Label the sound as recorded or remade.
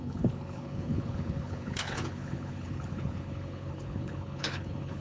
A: remade